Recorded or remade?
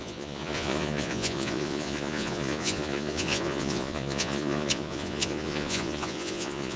remade